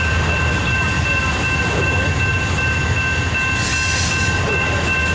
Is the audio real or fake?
real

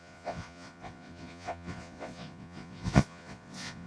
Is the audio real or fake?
fake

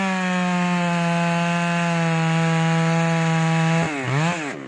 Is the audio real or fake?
real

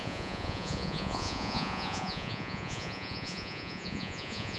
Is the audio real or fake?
fake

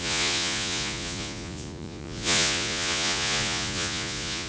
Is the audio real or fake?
fake